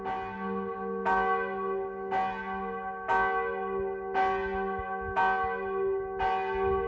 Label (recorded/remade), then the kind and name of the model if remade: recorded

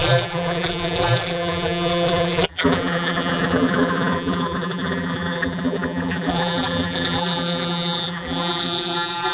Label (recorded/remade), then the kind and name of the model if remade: remade, vocoder, BigVGAN v2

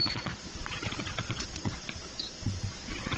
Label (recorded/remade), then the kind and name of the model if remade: remade, vocoder, Vocos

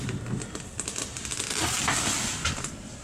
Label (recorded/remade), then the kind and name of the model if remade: recorded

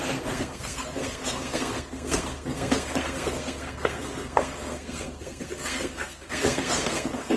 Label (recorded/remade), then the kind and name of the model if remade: remade, codec, SNAC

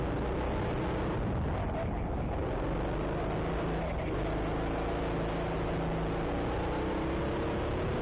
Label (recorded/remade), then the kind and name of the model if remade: recorded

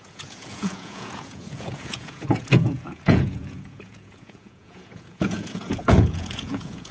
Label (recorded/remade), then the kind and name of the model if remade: remade, vocoder, Vocos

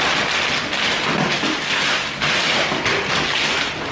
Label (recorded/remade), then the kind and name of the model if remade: recorded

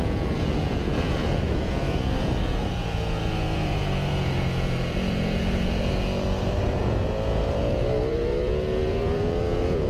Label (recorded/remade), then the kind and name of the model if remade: remade, vocoder, Vocos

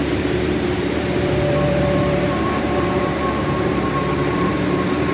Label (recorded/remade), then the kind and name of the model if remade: remade, vocoder, BigVGAN v2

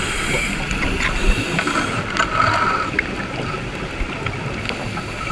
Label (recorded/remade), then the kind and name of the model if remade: recorded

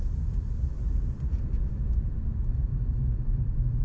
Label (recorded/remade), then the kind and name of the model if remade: remade, vocoder, BigVGAN v2